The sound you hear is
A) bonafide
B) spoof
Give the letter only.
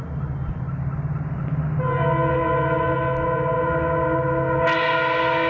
A